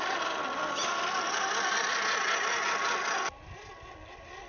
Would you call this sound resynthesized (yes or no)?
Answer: no